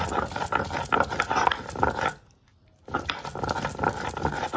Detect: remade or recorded recorded